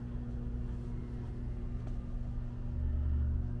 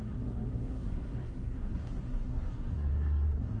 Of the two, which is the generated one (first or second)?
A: second